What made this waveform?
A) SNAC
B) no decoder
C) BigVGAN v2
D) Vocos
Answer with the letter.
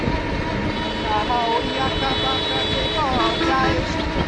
B